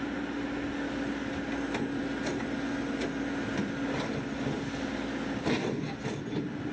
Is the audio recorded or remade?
recorded